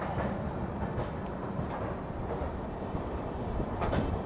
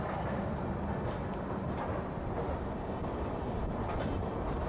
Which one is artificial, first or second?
first